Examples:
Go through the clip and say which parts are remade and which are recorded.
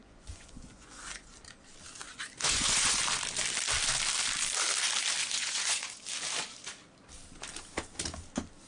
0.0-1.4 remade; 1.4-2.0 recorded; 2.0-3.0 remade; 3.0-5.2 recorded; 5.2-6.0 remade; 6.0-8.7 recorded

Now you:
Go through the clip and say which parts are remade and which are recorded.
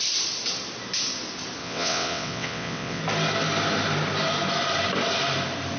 0.0-1.6 recorded; 1.6-3.0 remade; 3.0-5.8 recorded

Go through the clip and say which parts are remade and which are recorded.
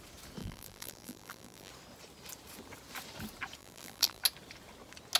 0.0-0.4 recorded; 0.4-1.7 remade; 1.7-3.6 recorded; 3.6-4.2 remade; 4.2-5.2 recorded